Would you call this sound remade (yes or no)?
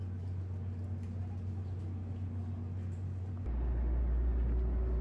no